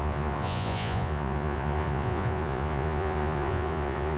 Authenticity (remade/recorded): remade